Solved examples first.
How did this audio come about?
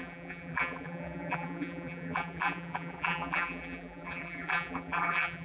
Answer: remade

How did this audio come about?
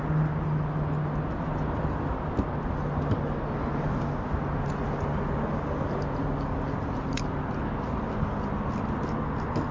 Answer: recorded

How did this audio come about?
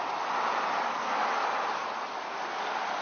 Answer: recorded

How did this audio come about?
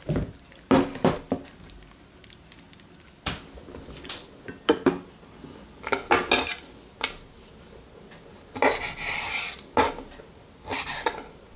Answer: recorded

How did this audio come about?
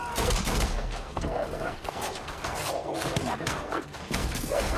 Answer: remade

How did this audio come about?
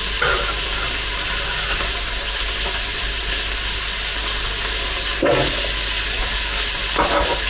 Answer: recorded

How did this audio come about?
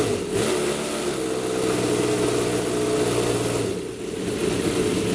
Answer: recorded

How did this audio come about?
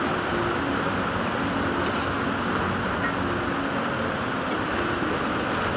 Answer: recorded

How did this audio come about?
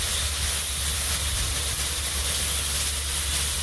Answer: recorded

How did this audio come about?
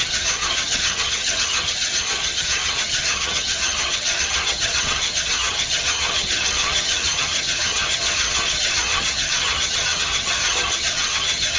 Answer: remade